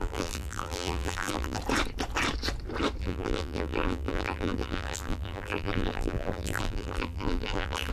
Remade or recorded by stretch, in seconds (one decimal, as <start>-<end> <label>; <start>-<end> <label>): 0.0-1.6 remade; 1.6-3.0 recorded; 3.0-7.9 remade